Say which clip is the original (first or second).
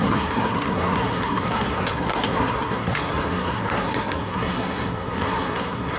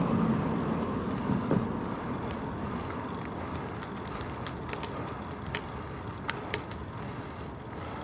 second